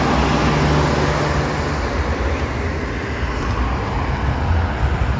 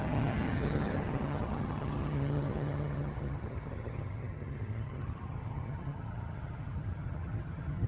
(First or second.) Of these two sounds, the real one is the first